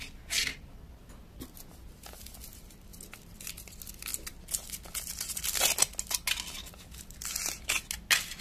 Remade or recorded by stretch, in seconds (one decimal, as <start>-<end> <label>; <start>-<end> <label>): 0.0-8.4 recorded